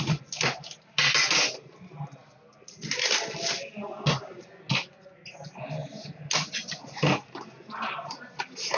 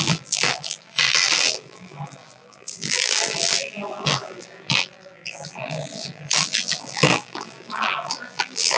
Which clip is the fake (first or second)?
second